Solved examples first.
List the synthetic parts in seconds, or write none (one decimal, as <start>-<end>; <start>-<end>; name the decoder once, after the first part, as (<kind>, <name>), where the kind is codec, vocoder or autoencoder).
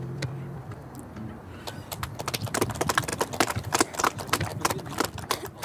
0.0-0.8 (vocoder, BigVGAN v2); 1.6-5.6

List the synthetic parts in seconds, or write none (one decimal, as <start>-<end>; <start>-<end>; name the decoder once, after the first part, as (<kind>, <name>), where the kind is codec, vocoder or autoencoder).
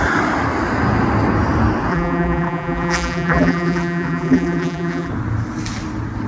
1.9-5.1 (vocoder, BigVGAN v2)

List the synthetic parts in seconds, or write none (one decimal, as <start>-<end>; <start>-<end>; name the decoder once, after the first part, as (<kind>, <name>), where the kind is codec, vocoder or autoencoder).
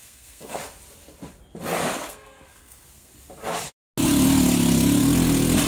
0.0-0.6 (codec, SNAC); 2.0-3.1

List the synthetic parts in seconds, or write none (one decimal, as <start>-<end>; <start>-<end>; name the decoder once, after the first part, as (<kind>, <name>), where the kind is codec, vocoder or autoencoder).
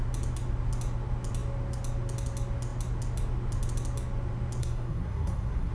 4.6-5.7 (codec, SNAC)